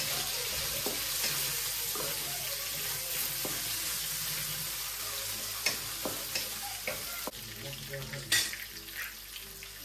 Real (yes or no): yes